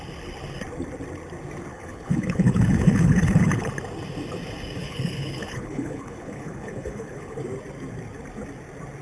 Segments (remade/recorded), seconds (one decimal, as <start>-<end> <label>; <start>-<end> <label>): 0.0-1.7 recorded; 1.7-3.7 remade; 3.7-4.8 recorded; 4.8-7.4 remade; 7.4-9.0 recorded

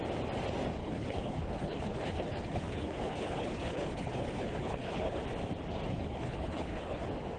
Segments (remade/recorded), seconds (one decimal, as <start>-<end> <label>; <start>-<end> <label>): 0.0-0.8 recorded; 0.8-5.2 remade; 5.2-5.9 recorded; 5.9-7.0 remade; 7.0-7.4 recorded

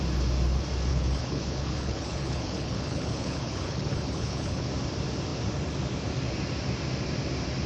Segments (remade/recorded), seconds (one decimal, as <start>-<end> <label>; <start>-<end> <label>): 0.0-0.9 recorded; 0.9-4.7 remade; 4.7-7.7 recorded